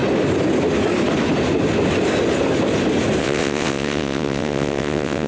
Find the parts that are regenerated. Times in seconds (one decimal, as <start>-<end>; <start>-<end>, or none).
3.2-5.3